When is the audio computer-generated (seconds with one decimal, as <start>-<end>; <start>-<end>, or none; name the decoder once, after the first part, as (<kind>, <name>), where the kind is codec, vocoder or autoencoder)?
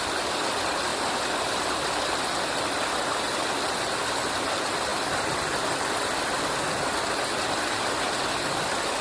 none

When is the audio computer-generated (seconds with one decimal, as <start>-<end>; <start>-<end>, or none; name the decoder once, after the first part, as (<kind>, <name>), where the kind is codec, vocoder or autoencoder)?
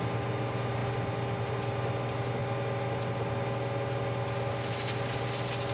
none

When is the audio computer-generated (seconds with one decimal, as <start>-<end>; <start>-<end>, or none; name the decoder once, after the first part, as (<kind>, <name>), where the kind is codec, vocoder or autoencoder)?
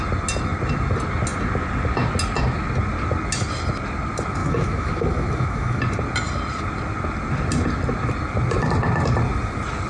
4.4-5.8 (autoencoder, DAC-VAE)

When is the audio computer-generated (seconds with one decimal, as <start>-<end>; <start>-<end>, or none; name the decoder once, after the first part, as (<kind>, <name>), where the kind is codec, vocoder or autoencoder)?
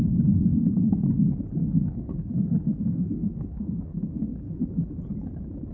0.5-1.1 (codec, SNAC); 1.6-4.6